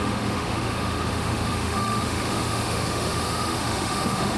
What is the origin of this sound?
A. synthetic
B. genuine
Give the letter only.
A